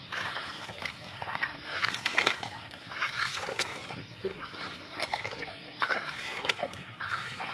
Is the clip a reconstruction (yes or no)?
yes